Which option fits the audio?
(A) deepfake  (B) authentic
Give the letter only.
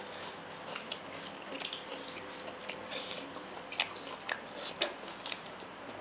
B